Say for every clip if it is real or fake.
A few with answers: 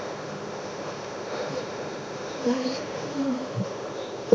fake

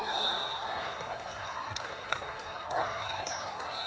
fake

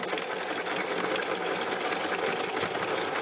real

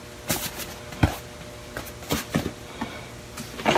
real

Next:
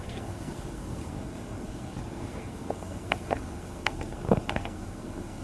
fake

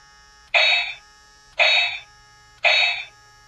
real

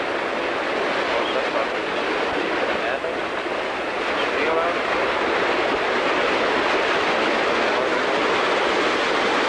real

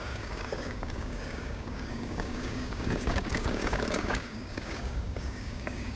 fake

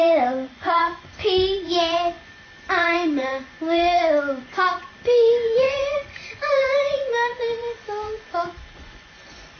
fake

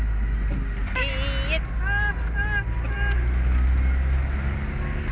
real